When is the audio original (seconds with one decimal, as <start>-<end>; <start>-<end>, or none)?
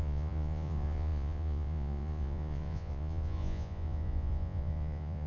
none